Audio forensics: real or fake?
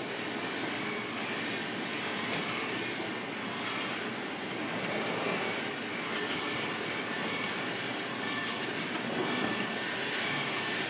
real